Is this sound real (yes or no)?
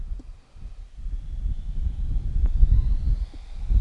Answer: yes